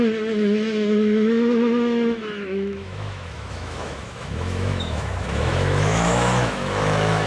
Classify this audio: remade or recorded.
remade